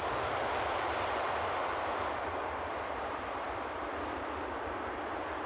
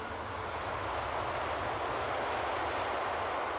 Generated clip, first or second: first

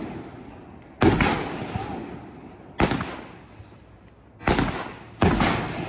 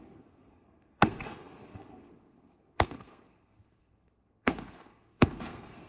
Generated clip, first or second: second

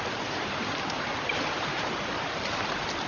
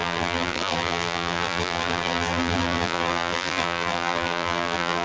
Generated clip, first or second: second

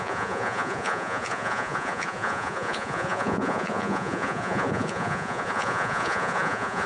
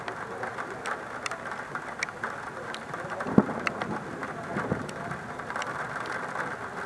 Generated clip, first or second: first